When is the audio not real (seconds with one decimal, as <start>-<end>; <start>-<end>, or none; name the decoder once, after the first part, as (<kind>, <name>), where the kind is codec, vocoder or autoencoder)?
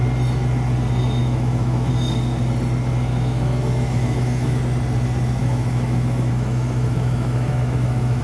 1.2-1.9 (autoencoder, DAC-VAE); 3.1-4.6; 5.4-8.2